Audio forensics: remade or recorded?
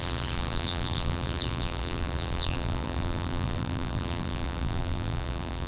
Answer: remade